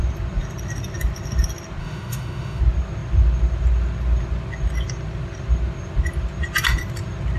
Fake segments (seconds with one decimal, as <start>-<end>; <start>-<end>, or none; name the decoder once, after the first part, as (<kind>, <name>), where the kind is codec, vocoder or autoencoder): 1.8-2.6 (autoencoder, DAC-VAE)